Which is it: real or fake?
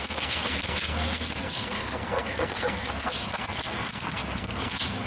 fake